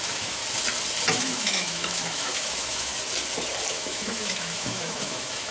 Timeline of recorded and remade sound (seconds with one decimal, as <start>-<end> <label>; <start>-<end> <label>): 0.0-0.4 remade; 0.4-1.1 recorded; 1.1-2.9 remade; 2.9-3.7 recorded; 3.7-5.5 remade